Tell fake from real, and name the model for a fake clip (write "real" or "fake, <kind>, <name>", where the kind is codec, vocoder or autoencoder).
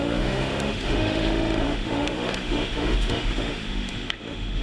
fake, autoencoder, DAC-VAE